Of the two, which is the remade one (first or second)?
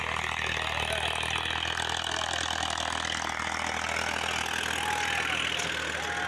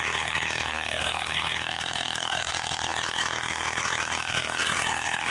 second